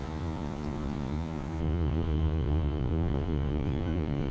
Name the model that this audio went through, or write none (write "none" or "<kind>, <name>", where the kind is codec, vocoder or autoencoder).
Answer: vocoder, Vocos